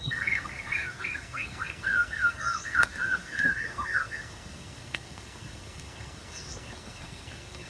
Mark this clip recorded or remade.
remade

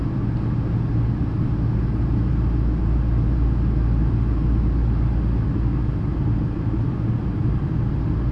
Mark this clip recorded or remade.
recorded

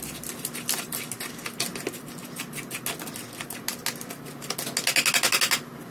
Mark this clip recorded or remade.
recorded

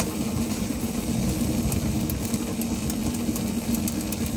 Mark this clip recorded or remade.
recorded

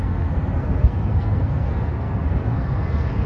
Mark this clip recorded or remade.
remade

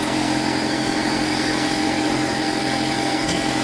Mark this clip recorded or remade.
remade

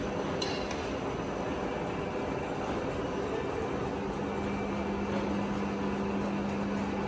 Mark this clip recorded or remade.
recorded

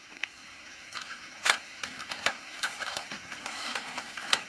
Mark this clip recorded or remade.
remade